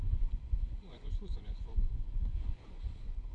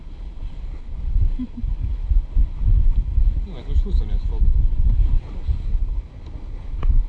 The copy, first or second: first